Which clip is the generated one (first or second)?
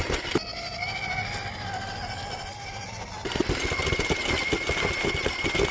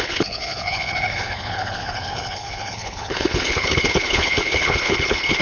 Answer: second